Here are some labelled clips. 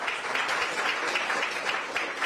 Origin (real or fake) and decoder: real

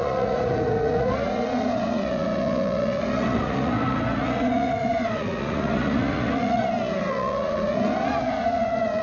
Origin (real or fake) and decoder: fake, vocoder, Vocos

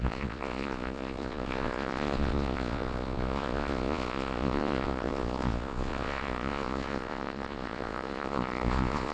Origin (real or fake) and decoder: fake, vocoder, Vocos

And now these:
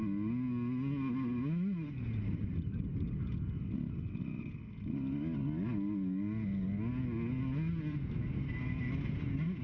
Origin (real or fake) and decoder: real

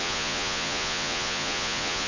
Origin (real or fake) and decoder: fake, vocoder, Vocos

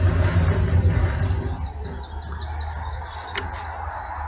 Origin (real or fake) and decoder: real